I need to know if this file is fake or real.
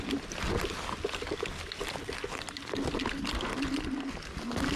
real